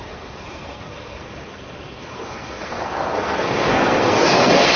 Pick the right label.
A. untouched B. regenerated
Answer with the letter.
B